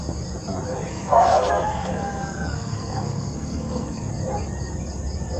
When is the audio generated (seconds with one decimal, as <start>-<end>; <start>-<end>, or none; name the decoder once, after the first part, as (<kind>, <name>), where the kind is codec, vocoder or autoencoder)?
0.9-4.1 (codec, SNAC)